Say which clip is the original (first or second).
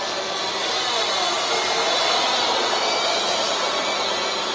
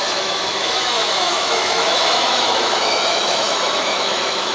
first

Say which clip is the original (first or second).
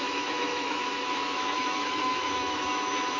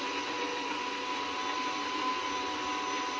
second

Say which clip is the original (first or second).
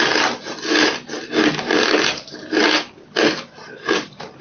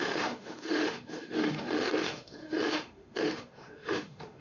first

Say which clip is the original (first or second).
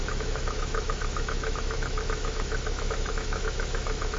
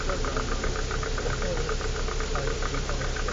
second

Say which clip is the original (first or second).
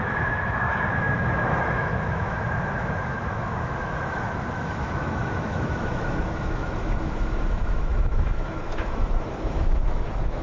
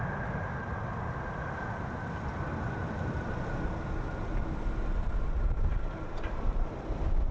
second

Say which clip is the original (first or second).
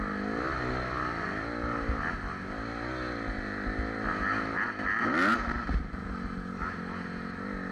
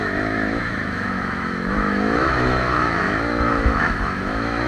first